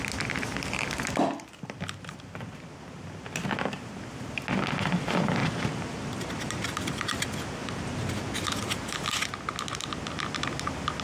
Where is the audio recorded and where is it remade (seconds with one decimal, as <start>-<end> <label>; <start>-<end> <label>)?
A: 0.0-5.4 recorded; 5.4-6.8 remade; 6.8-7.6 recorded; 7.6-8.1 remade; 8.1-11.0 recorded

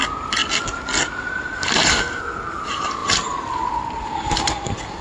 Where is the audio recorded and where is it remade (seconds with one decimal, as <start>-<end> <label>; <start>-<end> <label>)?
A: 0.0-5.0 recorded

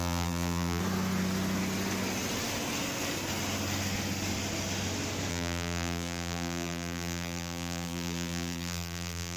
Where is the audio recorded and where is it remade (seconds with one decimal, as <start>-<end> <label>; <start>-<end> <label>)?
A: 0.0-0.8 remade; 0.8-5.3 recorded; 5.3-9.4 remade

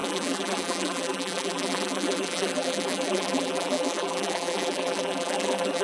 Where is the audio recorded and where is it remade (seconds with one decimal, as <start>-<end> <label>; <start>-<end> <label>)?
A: 0.0-5.8 remade